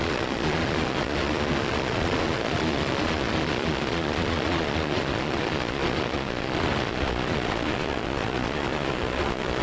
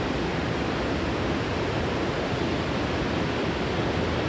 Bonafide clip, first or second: second